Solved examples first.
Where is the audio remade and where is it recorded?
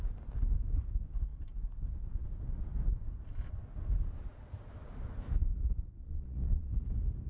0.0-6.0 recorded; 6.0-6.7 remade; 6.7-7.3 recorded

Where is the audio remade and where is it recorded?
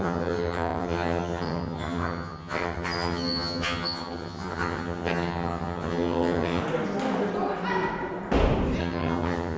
0.0-6.6 remade; 6.6-8.8 recorded; 8.8-9.6 remade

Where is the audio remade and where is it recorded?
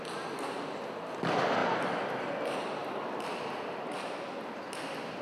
0.0-5.2 recorded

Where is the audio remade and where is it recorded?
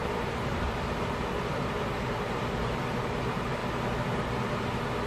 0.0-3.6 remade; 3.6-5.1 recorded